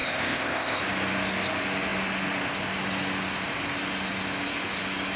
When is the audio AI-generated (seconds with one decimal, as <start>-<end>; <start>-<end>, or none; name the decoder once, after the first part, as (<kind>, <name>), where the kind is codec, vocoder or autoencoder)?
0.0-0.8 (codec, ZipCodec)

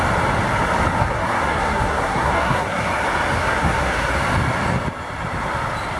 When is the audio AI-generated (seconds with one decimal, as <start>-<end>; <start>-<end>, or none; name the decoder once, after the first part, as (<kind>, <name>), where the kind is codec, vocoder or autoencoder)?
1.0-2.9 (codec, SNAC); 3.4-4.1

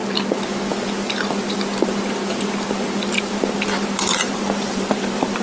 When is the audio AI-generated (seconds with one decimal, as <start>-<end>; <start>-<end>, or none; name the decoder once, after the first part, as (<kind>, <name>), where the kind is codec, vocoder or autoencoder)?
3.2-5.4 (vocoder, BigVGAN v2)

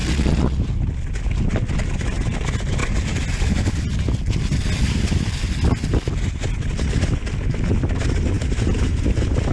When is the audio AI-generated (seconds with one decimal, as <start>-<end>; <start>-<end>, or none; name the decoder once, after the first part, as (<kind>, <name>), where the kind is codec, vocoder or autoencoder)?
0.0-0.6 (vocoder, Vocos)

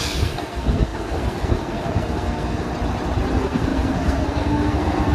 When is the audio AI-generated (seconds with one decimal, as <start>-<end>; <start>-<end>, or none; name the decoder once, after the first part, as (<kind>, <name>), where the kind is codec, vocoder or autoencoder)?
0.0-2.7 (codec, SNAC); 3.3-5.1

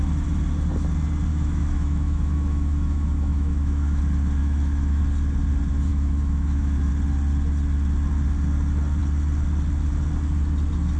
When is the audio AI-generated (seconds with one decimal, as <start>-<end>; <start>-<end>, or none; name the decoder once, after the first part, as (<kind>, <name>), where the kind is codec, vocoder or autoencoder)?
1.3-4.0 (autoencoder, DAC-VAE); 4.4-5.0; 5.9-6.9

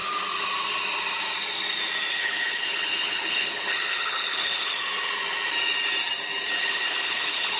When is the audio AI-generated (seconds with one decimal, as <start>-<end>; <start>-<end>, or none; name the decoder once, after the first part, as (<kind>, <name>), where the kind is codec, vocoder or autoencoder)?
2.1-4.8 (codec, HILCodec); 6.6-7.6